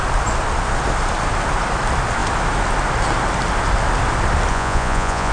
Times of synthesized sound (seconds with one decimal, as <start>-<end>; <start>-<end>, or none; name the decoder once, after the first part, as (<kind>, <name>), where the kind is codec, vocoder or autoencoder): 4.5-5.3 (vocoder, Vocos)

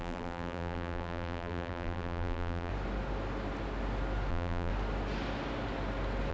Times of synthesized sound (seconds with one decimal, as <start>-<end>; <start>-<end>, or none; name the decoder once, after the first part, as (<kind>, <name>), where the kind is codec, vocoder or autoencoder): 0.0-2.7 (vocoder, BigVGAN v2); 4.3-4.7

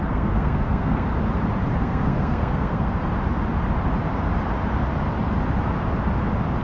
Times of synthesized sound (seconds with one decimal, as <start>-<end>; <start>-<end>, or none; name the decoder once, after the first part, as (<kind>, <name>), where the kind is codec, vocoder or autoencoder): 0.0-1.1 (codec, SNAC); 1.7-3.0

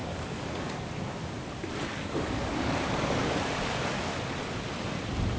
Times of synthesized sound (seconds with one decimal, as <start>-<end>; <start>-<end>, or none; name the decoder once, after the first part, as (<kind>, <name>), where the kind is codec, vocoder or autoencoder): 0.0-0.9 (codec, DAC); 1.9-4.2

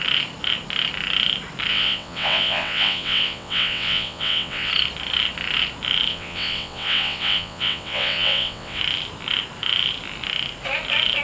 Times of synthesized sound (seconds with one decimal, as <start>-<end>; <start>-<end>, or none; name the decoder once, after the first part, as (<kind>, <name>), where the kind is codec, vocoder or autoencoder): 1.7-4.7 (vocoder, WaveNeXt); 6.1-8.8

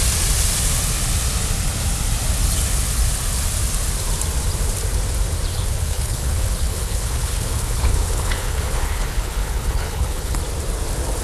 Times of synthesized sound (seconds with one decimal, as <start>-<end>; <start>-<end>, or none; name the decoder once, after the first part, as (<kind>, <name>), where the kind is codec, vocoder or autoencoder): 5.5-10.4 (codec, HILCodec)

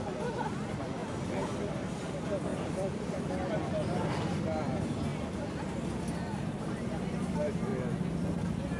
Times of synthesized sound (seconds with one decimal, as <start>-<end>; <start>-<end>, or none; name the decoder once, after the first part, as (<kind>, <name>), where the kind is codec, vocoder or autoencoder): 0.0-1.0 (vocoder, BigVGAN v2); 1.7-5.1; 6.3-7.7